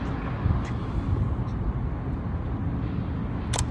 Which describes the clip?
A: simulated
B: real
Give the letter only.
B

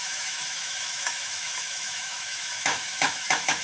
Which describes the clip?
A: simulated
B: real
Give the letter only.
A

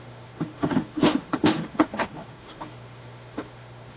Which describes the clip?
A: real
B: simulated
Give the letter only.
B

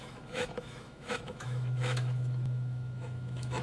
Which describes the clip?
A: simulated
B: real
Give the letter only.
A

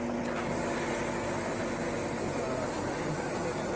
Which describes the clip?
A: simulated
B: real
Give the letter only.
B